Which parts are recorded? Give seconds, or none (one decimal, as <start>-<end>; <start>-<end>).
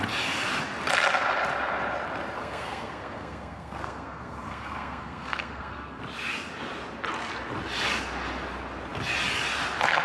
0.0-2.4; 6.0-10.0